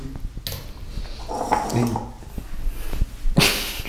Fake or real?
real